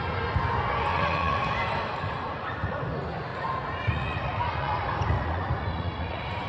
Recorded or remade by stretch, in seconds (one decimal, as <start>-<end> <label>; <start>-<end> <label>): 0.0-0.9 recorded; 0.9-1.4 remade; 1.4-1.9 recorded; 1.9-2.8 remade; 2.8-3.3 recorded; 3.3-6.5 remade